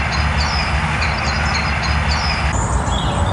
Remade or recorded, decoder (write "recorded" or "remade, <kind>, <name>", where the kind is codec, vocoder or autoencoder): recorded